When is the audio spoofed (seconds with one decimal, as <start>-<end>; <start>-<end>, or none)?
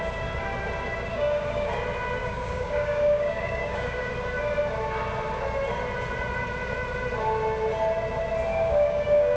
1.1-1.7; 2.2-4.1; 8.5-9.4